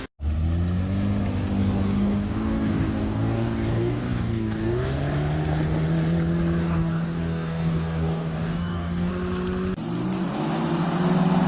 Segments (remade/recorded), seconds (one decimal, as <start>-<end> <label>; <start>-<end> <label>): 0.0-1.6 recorded; 1.6-5.0 remade; 5.0-6.6 recorded; 6.6-9.1 remade; 9.1-11.5 recorded

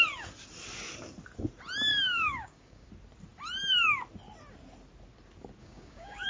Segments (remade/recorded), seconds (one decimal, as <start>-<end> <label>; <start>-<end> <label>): 0.0-1.9 recorded; 1.9-2.9 remade; 2.9-5.6 recorded; 5.6-6.3 remade

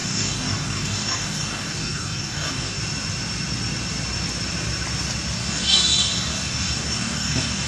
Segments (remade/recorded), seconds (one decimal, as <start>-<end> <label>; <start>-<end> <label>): 0.0-2.8 remade; 2.8-5.4 recorded; 5.4-7.7 remade

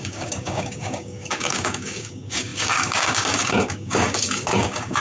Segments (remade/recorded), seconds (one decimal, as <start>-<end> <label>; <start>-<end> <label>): 0.0-5.0 remade

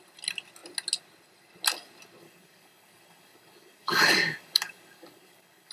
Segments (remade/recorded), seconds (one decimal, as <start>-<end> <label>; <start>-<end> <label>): 0.0-2.2 recorded; 2.2-5.7 remade

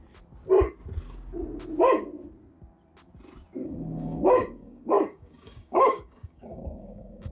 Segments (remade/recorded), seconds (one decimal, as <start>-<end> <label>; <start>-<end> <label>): 0.0-3.6 recorded; 3.6-7.3 remade